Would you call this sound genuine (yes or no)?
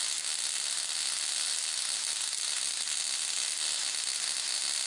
yes